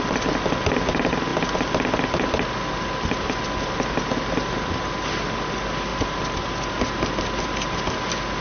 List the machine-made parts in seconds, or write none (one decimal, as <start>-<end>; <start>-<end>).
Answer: none